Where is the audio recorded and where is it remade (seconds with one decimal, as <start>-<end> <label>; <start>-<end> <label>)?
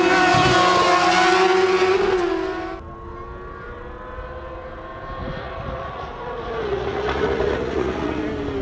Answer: 0.0-5.2 recorded; 5.2-8.2 remade; 8.2-8.6 recorded